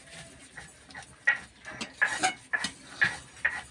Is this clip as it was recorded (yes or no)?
yes